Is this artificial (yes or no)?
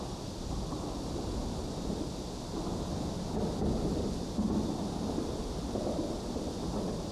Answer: no